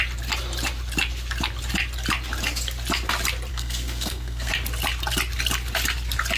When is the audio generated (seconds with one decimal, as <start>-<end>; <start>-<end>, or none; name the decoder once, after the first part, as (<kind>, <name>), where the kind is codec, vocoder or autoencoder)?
3.5-4.5 (codec, SNAC)